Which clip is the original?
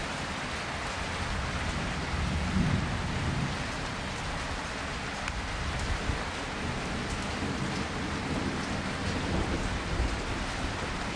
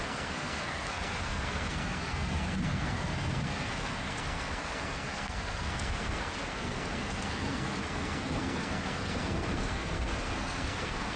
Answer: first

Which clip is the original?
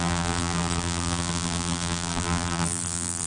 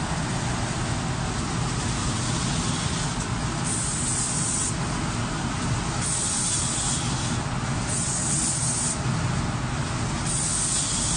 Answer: second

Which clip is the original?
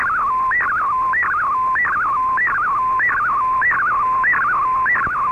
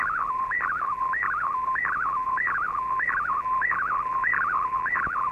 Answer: first